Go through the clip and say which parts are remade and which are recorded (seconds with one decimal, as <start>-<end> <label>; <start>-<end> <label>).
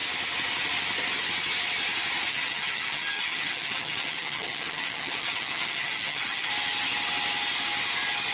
0.0-2.3 recorded; 2.3-6.5 remade; 6.5-8.3 recorded